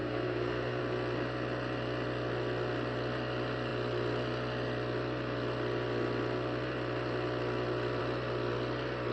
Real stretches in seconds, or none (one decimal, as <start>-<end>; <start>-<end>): 0.8-9.1